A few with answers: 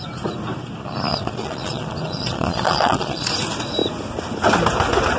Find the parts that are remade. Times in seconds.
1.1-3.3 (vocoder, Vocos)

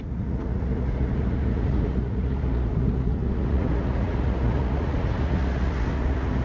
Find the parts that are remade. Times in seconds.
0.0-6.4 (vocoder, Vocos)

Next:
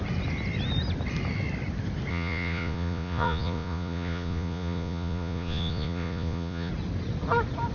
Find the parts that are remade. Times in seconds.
2.1-6.7 (vocoder, Vocos)

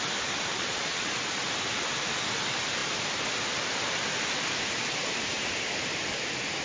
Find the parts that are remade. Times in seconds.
0.5-1.1 (vocoder, Vocos)

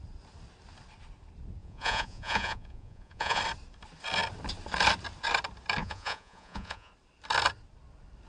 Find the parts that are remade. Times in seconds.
1.6-3.4 (vocoder, Vocos); 5.8-6.9